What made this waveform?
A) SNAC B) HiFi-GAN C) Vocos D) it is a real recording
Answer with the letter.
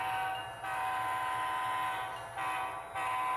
D